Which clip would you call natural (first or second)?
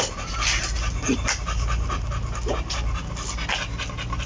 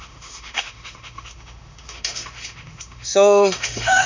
first